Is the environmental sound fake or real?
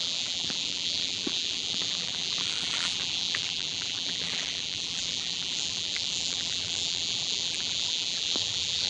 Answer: fake